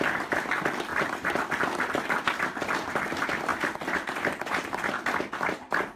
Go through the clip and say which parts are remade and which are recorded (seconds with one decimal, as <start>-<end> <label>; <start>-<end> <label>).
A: 0.0-6.0 recorded